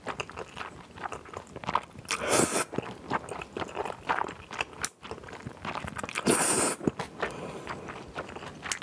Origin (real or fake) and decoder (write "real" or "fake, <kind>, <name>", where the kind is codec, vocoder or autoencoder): real